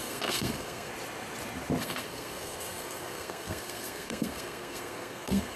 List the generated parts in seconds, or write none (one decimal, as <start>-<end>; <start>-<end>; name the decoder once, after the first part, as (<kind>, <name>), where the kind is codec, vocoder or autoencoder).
0.0-0.9 (codec, SNAC); 1.8-5.6